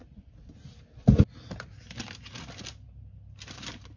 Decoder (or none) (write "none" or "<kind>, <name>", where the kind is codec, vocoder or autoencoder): none